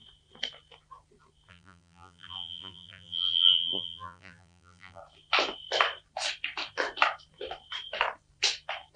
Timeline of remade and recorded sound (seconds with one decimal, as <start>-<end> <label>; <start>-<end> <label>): 0.0-1.5 recorded; 1.5-5.0 remade; 5.0-9.0 recorded